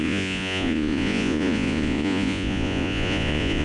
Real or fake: fake